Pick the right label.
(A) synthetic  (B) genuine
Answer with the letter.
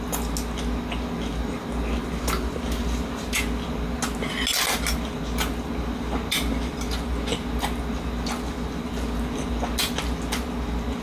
B